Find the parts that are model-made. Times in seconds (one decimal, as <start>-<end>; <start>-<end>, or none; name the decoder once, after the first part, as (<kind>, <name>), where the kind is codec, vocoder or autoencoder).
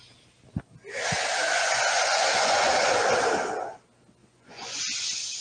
1.4-2.7 (vocoder, Vocos); 4.2-4.8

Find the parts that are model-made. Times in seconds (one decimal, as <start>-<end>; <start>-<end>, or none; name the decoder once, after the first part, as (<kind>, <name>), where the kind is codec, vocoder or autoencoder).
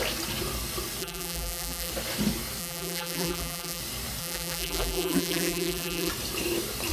1.0-1.9 (vocoder, BigVGAN v2); 2.6-3.8; 4.2-6.1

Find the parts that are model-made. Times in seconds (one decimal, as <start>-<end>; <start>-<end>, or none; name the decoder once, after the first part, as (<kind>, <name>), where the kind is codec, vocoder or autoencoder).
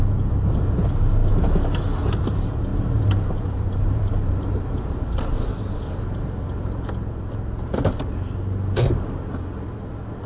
2.7-5.9 (vocoder, BigVGAN v2)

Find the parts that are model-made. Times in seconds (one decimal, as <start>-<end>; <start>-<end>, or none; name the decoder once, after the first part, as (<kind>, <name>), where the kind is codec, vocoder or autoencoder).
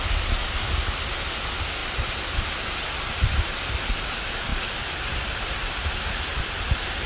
4.5-6.4 (vocoder, BigVGAN v2)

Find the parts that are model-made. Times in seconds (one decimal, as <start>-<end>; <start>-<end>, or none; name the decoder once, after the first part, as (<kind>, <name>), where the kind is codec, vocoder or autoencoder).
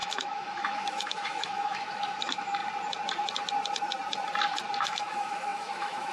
0.0-2.6 (autoencoder, DAC-VAE); 4.8-6.1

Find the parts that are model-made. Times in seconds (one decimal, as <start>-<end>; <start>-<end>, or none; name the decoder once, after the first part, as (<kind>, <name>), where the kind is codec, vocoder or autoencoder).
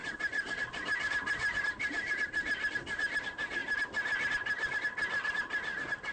0.0-3.0 (vocoder, BigVGAN v2)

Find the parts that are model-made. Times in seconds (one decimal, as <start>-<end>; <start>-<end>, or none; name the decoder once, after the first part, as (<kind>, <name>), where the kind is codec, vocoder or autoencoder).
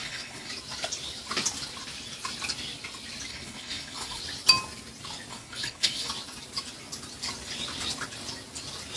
0.0-0.5 (codec, HILCodec); 3.3-4.2; 5.3-6.1